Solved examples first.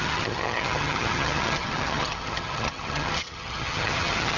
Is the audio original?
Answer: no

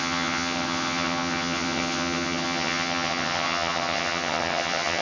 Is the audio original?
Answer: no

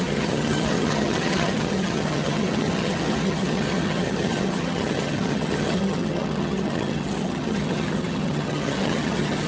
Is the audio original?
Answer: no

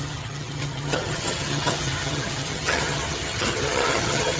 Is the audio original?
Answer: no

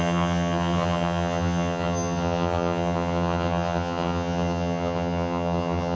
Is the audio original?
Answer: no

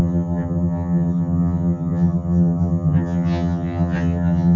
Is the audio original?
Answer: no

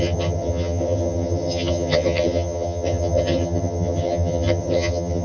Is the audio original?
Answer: no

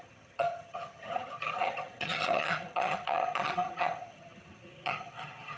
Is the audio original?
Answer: no